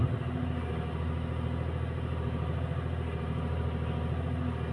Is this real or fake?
real